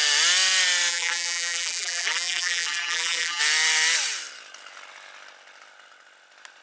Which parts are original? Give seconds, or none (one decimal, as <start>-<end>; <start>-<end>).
0.0-0.9; 3.4-6.6